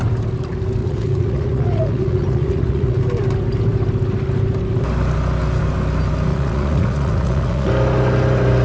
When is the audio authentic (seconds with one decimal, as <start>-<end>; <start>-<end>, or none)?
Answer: 0.0-0.8; 3.0-6.3; 7.7-8.6